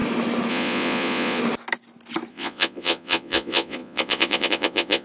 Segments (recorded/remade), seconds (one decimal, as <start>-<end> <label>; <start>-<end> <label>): 0.0-0.5 recorded; 0.5-1.4 remade; 1.4-2.3 recorded; 2.3-5.0 remade